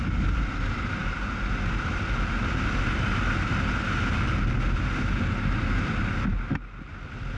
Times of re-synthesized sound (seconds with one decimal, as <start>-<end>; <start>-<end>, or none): none